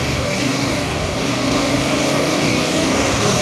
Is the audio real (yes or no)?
no